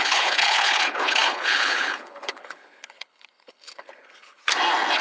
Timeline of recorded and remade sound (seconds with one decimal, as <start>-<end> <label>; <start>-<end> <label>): 0.0-4.4 remade; 4.4-5.0 recorded